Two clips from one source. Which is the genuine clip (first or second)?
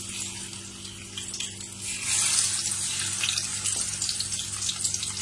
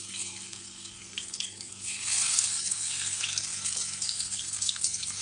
first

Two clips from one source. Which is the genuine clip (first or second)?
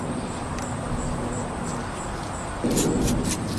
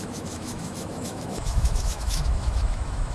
first